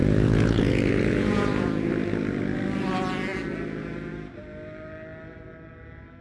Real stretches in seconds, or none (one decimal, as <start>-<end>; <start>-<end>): 1.9-6.2